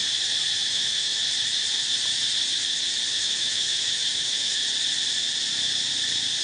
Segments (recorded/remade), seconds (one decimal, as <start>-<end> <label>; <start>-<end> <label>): 0.0-0.7 recorded; 0.7-1.2 remade; 1.2-3.1 recorded; 3.1-4.6 remade; 4.6-6.4 recorded